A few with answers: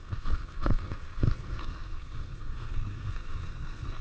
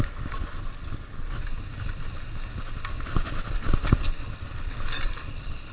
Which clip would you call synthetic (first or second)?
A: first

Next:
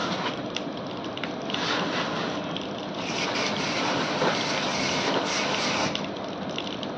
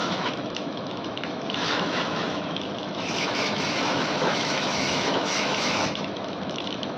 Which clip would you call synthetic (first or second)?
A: second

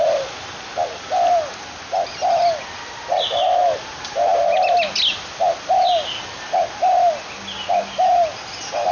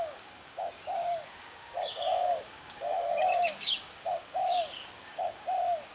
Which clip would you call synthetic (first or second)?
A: second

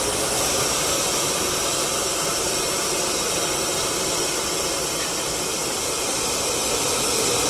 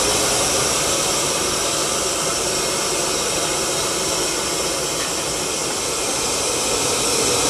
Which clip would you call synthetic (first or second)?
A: first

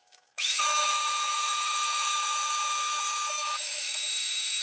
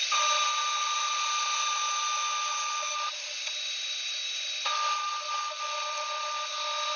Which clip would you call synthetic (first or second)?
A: first